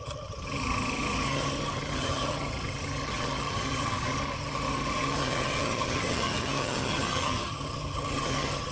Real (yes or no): no